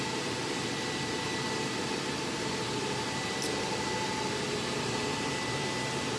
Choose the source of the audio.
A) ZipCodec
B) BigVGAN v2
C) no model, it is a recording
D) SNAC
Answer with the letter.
C